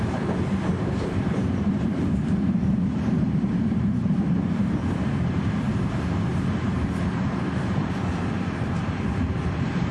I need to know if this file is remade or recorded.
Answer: remade